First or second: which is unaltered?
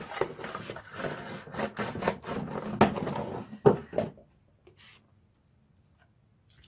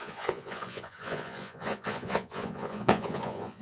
first